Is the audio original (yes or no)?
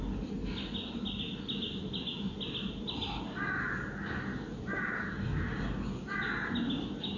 yes